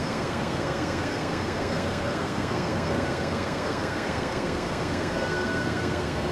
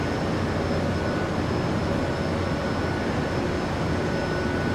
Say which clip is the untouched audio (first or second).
second